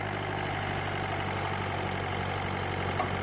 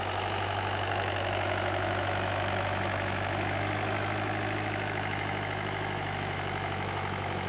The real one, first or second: first